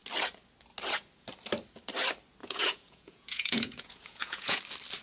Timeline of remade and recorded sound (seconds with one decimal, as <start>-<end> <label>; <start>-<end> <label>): 0.0-2.4 recorded; 2.4-4.6 remade; 4.6-5.0 recorded